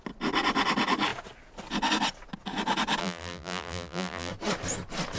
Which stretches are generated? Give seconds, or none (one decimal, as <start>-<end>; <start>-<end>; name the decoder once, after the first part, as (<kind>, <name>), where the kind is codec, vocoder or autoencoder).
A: 3.0-4.3 (vocoder, BigVGAN v2)